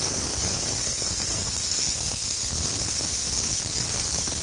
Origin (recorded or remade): remade